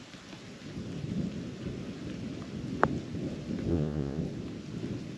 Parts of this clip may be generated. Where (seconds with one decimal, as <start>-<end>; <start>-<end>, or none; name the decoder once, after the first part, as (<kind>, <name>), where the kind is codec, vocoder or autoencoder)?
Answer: 3.7-4.2 (vocoder, Vocos)